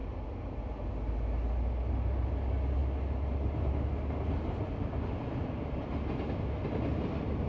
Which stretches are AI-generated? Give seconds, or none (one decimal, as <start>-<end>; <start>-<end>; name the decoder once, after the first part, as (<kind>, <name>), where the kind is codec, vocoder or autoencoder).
none